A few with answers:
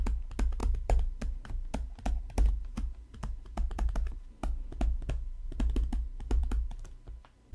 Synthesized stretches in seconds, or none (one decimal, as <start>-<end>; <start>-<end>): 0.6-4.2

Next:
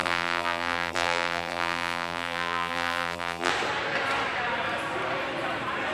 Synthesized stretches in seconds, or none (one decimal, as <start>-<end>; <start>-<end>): 0.0-3.5

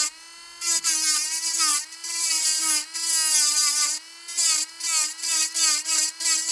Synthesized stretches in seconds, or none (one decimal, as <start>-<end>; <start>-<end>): 1.7-2.6